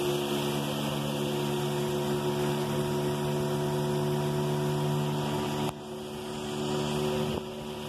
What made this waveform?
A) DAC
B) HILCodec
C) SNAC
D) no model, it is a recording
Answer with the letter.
D